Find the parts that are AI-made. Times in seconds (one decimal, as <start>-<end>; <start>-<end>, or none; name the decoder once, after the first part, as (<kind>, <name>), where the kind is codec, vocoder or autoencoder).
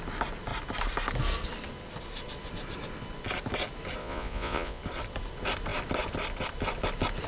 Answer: 4.0-4.8 (vocoder, Vocos)